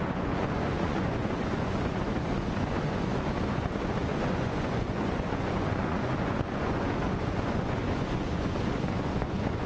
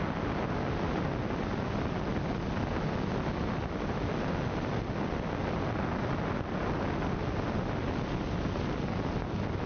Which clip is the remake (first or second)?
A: first